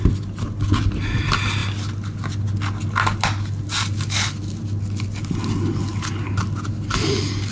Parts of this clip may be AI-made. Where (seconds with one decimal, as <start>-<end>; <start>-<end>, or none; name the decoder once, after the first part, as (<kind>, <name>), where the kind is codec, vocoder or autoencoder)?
none